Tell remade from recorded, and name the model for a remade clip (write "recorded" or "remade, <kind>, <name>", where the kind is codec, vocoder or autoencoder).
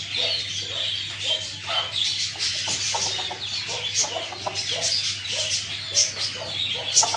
recorded